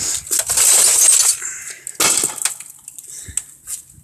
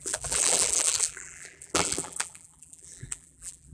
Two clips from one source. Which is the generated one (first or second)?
second